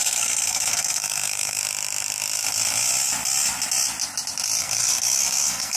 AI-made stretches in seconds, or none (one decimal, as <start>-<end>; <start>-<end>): 0.0-1.6; 4.6-5.8